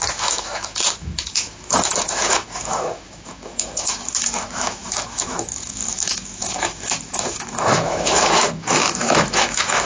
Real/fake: fake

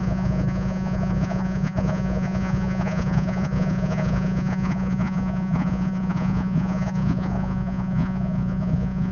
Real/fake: fake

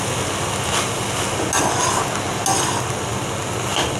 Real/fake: real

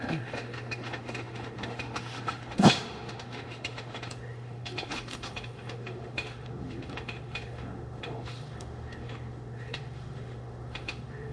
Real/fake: fake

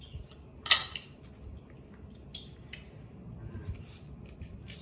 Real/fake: real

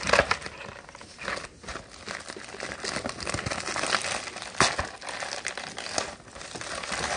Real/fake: real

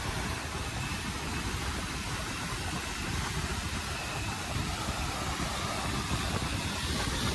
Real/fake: real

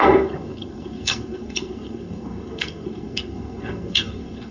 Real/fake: fake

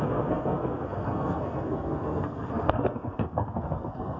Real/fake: fake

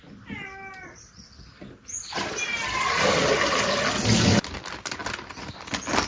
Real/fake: real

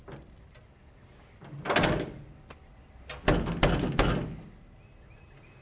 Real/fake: real